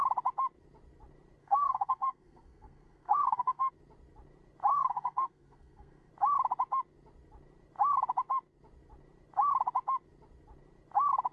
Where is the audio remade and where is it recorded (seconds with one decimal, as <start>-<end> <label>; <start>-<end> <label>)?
0.0-1.4 recorded; 1.4-3.7 remade; 3.7-4.7 recorded; 4.7-6.1 remade; 6.1-11.3 recorded